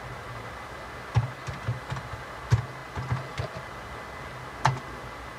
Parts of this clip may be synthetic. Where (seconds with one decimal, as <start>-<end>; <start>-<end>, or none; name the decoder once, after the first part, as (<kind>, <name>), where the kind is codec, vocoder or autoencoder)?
none